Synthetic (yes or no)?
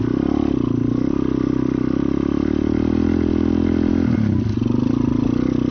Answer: no